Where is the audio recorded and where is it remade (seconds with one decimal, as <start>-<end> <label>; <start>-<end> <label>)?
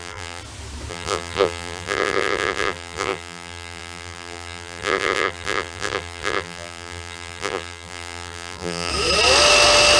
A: 0.0-0.4 remade; 0.4-0.9 recorded; 0.9-8.9 remade; 8.9-10.0 recorded